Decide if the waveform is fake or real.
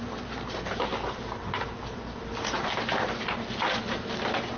real